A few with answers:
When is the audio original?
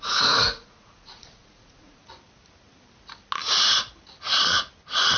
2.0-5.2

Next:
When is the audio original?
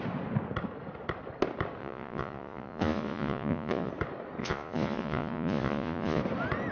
0.0-1.8; 3.9-4.4; 6.2-6.7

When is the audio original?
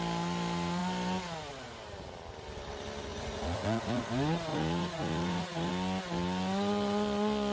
0.0-3.1; 4.0-4.5; 5.7-7.5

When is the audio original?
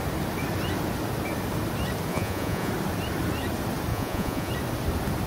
0.0-2.1; 2.7-3.9; 4.5-5.3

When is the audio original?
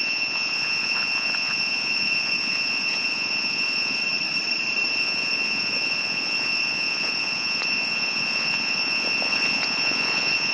4.0-4.9